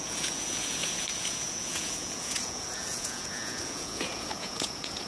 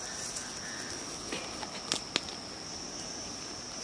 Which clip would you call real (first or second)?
second